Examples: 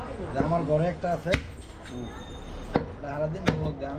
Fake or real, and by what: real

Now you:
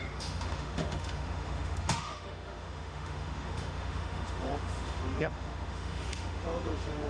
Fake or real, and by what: fake, autoencoder, DAC-VAE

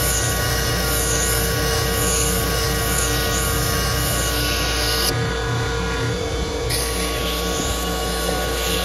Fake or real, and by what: real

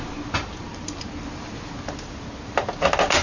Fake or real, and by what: real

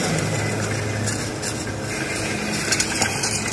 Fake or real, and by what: real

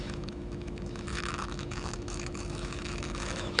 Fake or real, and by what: fake, autoencoder, DAC-VAE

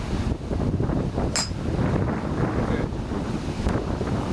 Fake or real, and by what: real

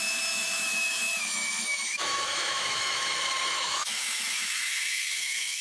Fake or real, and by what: fake, autoencoder, DAC-VAE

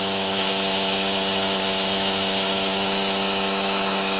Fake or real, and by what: fake, autoencoder, DAC-VAE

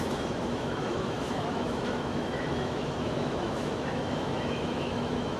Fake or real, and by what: fake, autoencoder, DAC-VAE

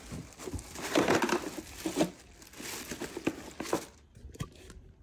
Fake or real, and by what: real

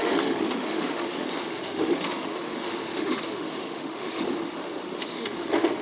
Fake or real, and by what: fake, autoencoder, DAC-VAE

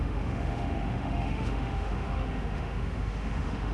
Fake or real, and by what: fake, autoencoder, DAC-VAE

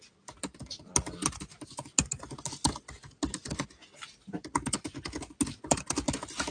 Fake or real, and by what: real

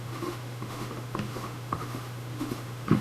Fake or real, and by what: fake, autoencoder, DAC-VAE